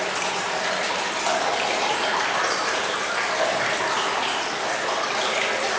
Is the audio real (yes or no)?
yes